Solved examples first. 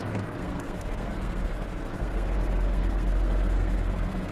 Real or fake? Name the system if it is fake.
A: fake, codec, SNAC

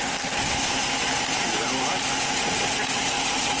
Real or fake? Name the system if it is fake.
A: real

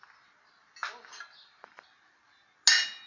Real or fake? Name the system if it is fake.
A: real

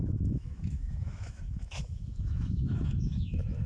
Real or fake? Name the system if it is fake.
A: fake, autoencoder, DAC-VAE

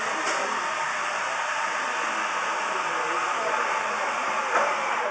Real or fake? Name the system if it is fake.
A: real